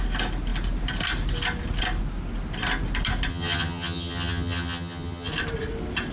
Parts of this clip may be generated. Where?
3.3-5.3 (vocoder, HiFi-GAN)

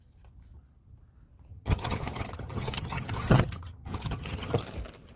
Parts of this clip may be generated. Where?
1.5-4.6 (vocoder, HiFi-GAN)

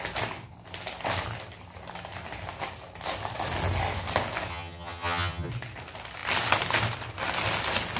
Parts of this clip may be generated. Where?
4.5-5.5 (vocoder, HiFi-GAN)

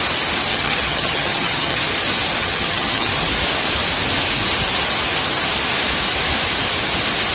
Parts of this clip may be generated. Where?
0.5-1.8 (vocoder, HiFi-GAN); 2.4-3.1

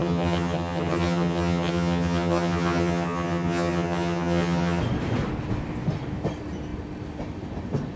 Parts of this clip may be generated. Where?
0.0-4.8 (vocoder, HiFi-GAN)

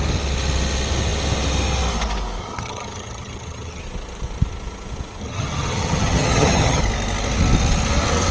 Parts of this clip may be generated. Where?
2.4-3.8 (vocoder, HiFi-GAN); 5.2-6.8

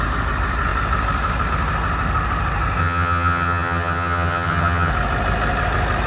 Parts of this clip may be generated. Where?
2.8-4.9 (vocoder, HiFi-GAN)